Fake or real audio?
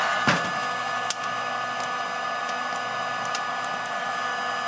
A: real